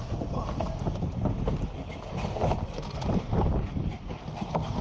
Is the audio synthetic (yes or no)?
no